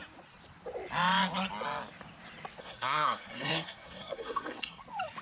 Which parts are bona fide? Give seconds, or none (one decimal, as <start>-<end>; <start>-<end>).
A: 0.0-2.6; 4.8-5.2